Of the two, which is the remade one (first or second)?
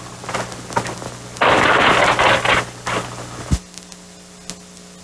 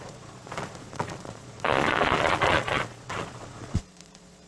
second